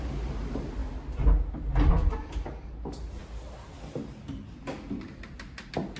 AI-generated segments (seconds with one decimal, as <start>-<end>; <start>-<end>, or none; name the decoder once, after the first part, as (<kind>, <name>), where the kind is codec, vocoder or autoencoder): none